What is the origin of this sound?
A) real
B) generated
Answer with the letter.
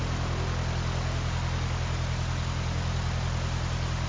A